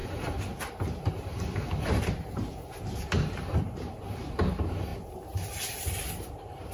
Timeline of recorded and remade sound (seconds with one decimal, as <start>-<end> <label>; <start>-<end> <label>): 0.0-0.7 recorded; 0.7-6.7 remade